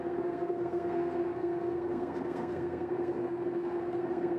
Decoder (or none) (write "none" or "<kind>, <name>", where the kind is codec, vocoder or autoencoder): codec, SNAC